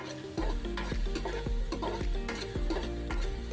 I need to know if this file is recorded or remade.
recorded